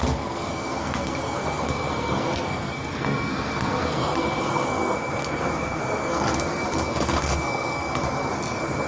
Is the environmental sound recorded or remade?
remade